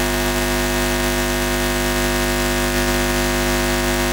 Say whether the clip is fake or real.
real